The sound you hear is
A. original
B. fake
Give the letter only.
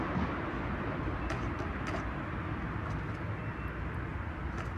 A